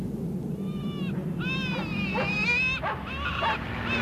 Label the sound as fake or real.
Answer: real